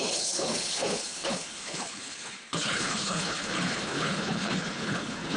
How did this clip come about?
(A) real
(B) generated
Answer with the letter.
B